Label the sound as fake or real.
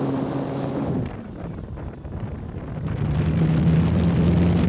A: fake